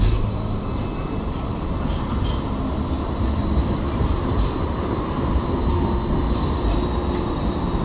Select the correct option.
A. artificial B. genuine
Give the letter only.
B